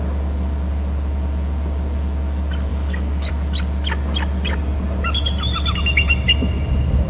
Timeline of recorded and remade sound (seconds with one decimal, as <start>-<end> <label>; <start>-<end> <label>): 0.0-2.7 recorded; 2.7-3.3 remade; 3.3-7.1 recorded